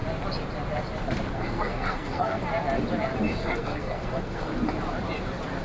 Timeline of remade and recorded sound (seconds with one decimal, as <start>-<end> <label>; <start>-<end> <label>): 0.0-1.3 recorded; 1.3-2.4 remade; 2.4-3.4 recorded; 3.4-4.5 remade; 4.5-5.6 recorded